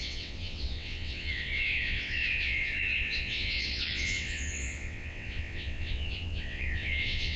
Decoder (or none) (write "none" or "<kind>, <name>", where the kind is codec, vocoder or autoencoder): vocoder, WaveNeXt